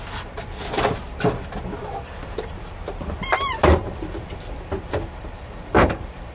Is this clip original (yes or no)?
no